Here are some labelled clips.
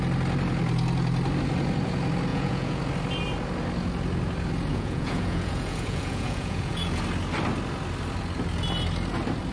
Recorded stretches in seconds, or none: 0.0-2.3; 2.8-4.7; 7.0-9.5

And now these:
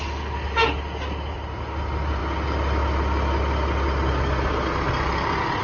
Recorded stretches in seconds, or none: 0.0-5.6

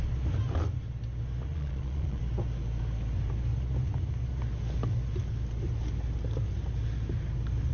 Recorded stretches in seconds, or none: 0.0-1.5; 2.2-7.7

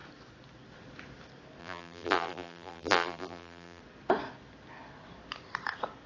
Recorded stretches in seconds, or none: 0.0-1.6; 3.8-6.1

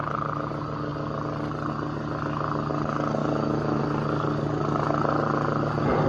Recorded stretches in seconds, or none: 0.0-3.2; 3.8-6.1